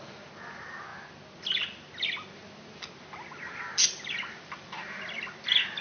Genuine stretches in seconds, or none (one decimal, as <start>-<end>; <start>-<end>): 0.0-5.8